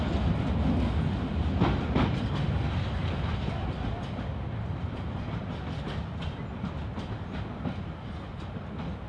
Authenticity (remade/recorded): recorded